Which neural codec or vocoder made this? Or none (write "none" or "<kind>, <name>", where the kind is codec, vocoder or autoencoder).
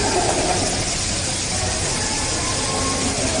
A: none